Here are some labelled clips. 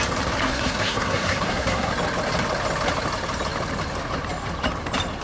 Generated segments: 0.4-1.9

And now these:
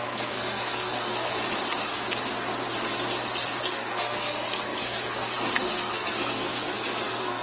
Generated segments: 0.0-1.4; 3.6-7.4